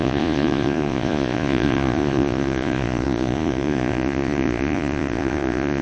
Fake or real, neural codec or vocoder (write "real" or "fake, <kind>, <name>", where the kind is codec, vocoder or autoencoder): fake, vocoder, Vocos